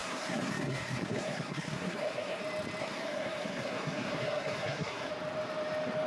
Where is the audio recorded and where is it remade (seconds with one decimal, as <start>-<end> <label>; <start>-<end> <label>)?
0.0-2.4 remade; 2.4-2.8 recorded; 2.8-5.1 remade; 5.1-6.1 recorded